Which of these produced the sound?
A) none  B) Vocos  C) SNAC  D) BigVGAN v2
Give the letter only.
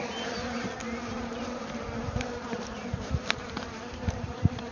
D